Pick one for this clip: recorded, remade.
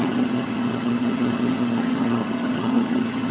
remade